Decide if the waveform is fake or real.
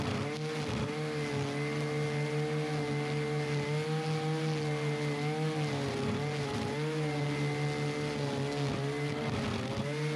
real